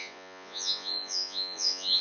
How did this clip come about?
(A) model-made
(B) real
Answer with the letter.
A